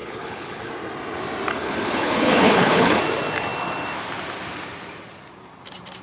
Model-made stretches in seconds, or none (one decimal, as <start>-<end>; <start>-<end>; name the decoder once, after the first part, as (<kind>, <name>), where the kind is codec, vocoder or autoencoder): 0.0-0.7 (codec, HILCodec); 1.5-3.0